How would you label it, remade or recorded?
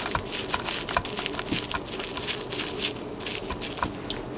recorded